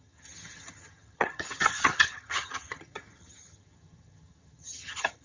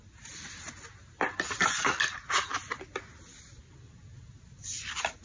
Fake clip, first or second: first